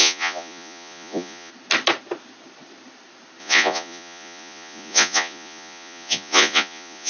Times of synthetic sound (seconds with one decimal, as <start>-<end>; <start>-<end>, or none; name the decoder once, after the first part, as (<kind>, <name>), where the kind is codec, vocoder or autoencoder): 0.0-1.5 (vocoder, Vocos); 3.4-7.1